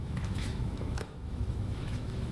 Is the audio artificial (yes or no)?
yes